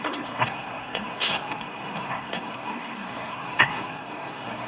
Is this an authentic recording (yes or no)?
no